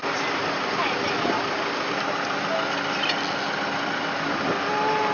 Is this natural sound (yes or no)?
yes